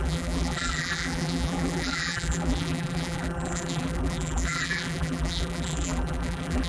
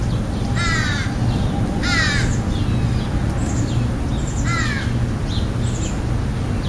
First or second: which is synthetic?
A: first